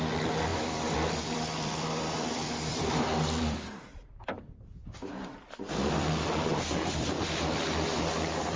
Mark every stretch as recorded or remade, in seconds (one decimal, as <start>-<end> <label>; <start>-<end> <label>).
0.0-0.5 recorded; 0.5-5.7 remade; 5.7-8.6 recorded